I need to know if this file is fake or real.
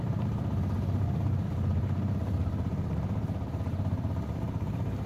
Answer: fake